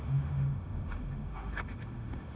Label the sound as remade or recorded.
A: remade